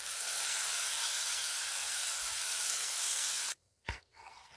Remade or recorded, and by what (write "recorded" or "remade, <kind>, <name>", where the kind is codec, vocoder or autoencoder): remade, codec, SNAC